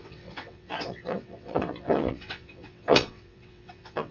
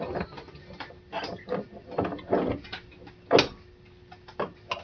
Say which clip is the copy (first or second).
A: first